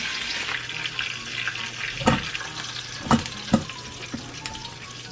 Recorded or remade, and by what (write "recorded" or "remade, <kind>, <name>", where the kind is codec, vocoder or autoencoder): recorded